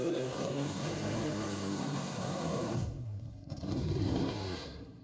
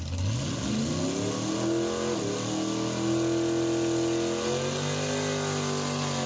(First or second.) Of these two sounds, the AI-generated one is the first